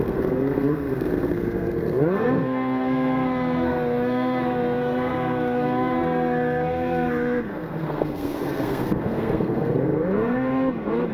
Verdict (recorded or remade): remade